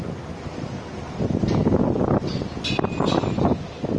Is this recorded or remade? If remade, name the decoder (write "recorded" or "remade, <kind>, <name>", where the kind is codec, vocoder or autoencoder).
recorded